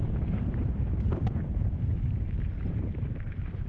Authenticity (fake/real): fake